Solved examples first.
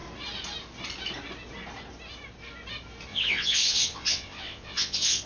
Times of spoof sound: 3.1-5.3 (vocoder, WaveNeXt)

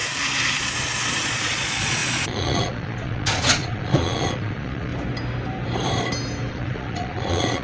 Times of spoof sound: 1.1-4.9 (vocoder, Vocos); 6.5-7.6

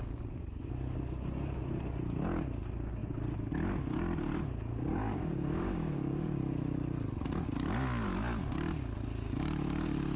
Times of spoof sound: 4.9-6.4 (codec, DAC)

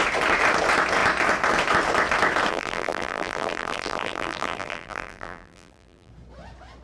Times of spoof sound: 2.5-6.1 (vocoder, BigVGAN v2)

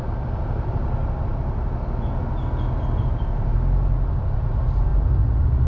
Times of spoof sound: none

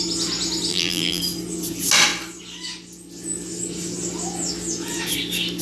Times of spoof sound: 0.7-1.2 (vocoder, BigVGAN v2)